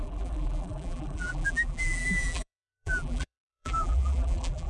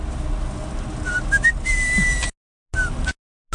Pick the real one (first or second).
second